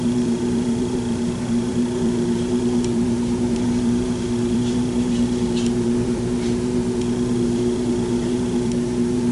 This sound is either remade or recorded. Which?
remade